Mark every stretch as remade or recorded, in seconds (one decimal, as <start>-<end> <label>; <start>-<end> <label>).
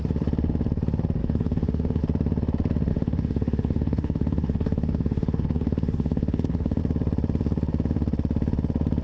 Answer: 0.0-1.2 recorded; 1.2-2.0 remade; 2.0-2.9 recorded; 2.9-6.8 remade; 6.8-9.0 recorded